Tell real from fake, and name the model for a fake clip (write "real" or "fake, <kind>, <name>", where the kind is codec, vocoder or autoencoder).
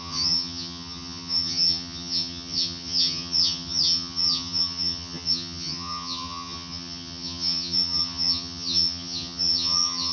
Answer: fake, vocoder, HiFi-GAN